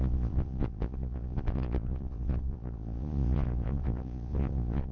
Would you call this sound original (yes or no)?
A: no